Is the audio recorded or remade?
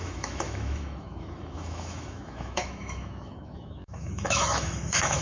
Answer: remade